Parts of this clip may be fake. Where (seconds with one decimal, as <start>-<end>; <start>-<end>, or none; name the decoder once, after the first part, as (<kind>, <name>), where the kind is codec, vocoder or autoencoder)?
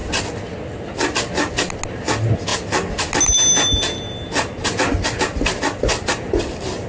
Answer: none